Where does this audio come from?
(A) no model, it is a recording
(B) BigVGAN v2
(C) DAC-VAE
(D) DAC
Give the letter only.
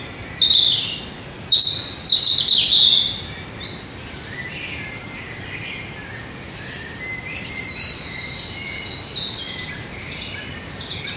A